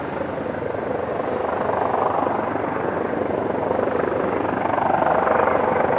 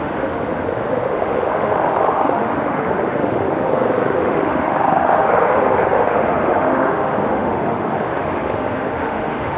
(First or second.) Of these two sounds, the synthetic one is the second